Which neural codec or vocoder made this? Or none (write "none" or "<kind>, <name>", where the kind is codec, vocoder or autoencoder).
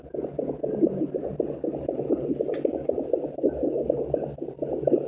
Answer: none